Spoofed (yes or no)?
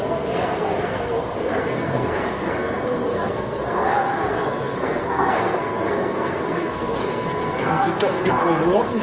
yes